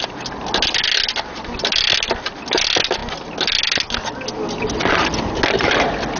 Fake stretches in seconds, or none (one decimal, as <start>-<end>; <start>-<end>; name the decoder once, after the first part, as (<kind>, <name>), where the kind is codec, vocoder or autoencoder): none